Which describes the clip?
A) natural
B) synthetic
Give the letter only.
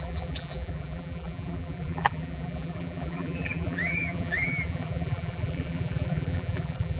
B